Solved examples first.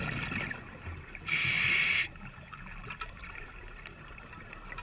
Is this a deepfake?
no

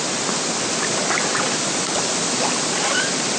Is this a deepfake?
no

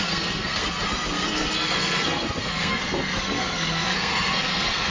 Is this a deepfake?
yes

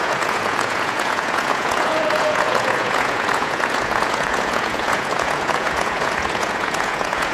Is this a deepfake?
yes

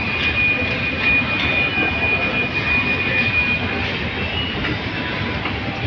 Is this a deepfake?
no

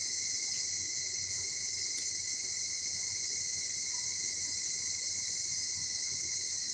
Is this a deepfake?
yes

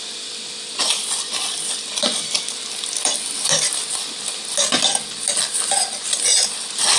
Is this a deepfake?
no